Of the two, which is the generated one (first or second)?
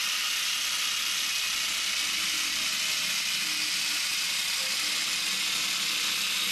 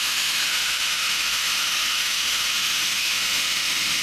second